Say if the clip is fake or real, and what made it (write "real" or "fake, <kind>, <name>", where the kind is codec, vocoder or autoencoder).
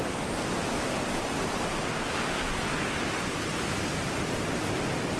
fake, vocoder, BigVGAN v2